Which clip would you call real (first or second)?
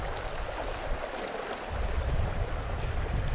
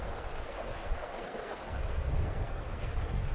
first